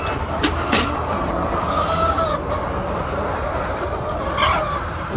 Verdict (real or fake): fake